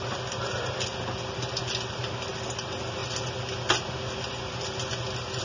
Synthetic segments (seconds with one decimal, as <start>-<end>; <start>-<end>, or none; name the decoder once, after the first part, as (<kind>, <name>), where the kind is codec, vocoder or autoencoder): none